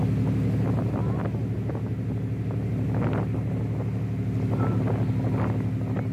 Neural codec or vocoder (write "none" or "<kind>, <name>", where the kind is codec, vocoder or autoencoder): none